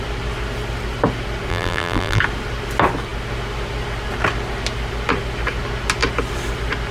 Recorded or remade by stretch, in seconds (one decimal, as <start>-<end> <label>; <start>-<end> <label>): 0.0-1.5 recorded; 1.5-2.2 remade; 2.2-6.9 recorded